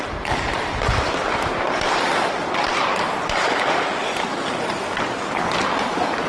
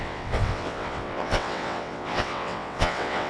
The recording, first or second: first